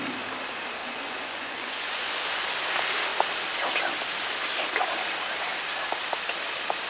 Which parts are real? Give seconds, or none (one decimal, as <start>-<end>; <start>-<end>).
0.0-0.8; 2.6-6.9